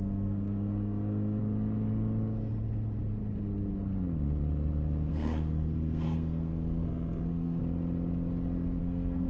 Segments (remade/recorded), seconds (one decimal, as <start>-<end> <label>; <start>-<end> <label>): 0.0-1.4 remade; 1.4-5.1 recorded; 5.1-7.6 remade; 7.6-8.8 recorded; 8.8-9.3 remade